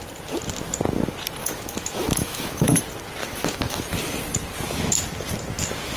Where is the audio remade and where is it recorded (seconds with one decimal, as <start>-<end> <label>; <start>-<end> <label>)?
0.0-1.4 recorded; 1.4-2.8 remade; 2.8-3.2 recorded; 3.2-3.8 remade; 3.8-6.0 recorded